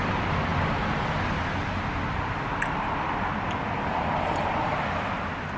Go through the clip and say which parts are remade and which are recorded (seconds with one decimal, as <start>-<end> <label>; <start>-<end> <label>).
0.0-5.6 recorded